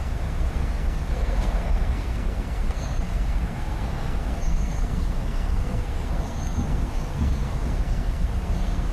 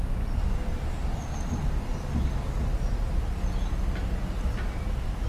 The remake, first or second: first